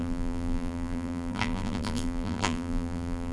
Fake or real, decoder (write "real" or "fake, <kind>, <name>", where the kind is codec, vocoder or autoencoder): fake, vocoder, BigVGAN v2